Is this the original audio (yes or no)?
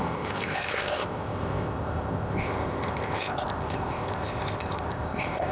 no